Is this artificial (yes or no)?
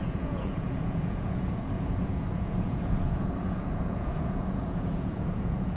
yes